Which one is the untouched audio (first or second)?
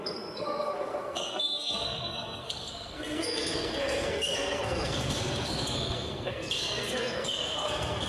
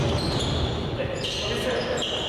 second